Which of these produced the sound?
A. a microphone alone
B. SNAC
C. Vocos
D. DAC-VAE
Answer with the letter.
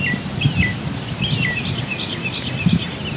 A